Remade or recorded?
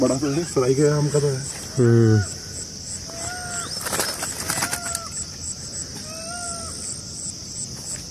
recorded